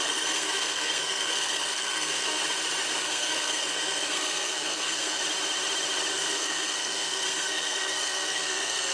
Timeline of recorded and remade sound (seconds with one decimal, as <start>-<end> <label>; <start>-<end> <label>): 0.0-2.4 remade; 2.4-3.0 recorded; 3.0-5.2 remade; 5.2-6.1 recorded; 6.1-8.9 remade